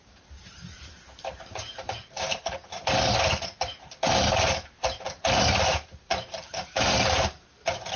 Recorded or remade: remade